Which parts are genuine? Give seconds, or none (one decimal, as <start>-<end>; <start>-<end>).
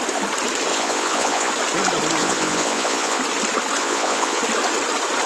0.0-0.7; 1.5-2.2; 3.2-3.8; 4.4-5.3